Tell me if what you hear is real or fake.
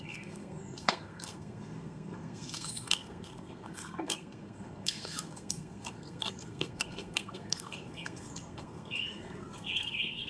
fake